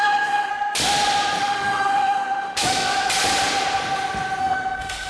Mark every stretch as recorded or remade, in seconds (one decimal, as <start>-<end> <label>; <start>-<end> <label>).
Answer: 0.0-0.5 remade; 0.5-1.4 recorded; 1.4-2.9 remade; 2.9-4.4 recorded; 4.4-5.1 remade